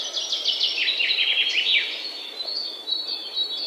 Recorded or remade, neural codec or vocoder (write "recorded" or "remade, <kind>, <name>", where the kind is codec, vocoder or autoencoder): recorded